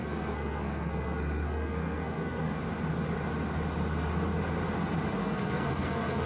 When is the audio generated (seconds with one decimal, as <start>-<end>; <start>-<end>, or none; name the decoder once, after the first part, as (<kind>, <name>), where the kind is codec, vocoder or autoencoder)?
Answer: 0.0-2.6 (codec, SNAC); 5.2-6.3